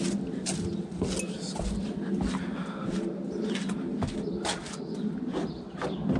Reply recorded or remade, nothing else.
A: recorded